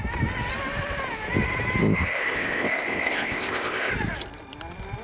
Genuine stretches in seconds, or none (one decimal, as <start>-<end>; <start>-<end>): 0.0-1.8; 3.9-5.0